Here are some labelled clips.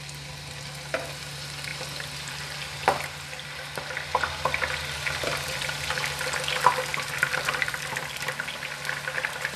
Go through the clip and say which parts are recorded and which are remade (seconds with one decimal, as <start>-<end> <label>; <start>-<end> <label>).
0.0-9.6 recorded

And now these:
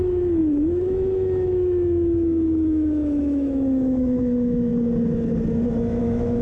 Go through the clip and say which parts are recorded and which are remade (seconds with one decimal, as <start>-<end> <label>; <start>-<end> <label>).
0.0-4.7 remade; 4.7-6.0 recorded; 6.0-6.4 remade

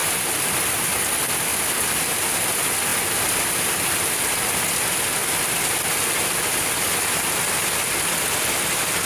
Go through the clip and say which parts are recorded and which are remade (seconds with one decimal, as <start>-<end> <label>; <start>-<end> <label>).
0.0-0.8 remade; 0.8-1.5 recorded; 1.5-2.2 remade; 2.2-2.9 recorded; 2.9-3.5 remade; 3.5-5.2 recorded; 5.2-7.5 remade; 7.5-9.1 recorded

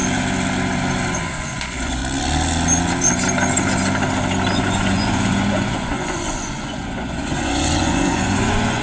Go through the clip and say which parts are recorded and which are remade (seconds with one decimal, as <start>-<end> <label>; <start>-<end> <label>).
0.0-1.1 recorded; 1.1-2.0 remade; 2.0-4.5 recorded; 4.5-8.8 remade

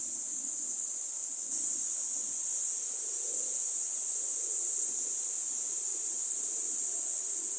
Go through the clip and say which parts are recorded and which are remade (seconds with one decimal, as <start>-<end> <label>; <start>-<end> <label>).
0.0-4.3 recorded; 4.3-5.1 remade; 5.1-5.9 recorded; 5.9-6.4 remade; 6.4-7.6 recorded

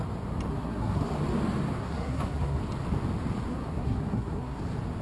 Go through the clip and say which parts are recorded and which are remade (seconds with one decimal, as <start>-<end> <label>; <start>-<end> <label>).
0.0-0.5 recorded; 0.5-1.0 remade; 1.0-1.8 recorded; 1.8-2.6 remade; 2.6-3.5 recorded; 3.5-4.6 remade; 4.6-5.0 recorded